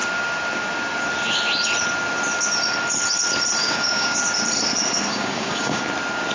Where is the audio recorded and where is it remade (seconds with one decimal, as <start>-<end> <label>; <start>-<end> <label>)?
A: 0.0-3.6 recorded; 3.6-4.2 remade; 4.2-5.1 recorded; 5.1-5.8 remade; 5.8-6.3 recorded